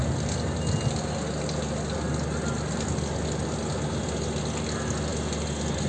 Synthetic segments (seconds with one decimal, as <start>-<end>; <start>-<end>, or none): none